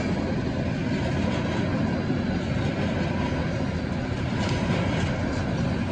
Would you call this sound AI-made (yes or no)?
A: no